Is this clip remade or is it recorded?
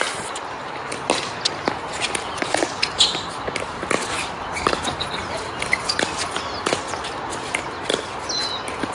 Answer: recorded